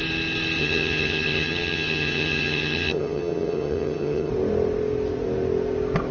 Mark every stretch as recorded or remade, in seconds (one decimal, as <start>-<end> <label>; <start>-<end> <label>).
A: 0.0-0.6 recorded; 0.6-4.3 remade; 4.3-6.1 recorded